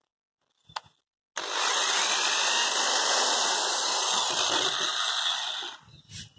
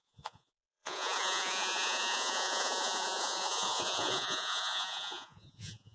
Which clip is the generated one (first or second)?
second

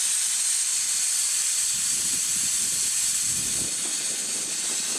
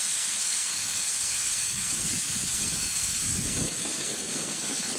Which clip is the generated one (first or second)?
second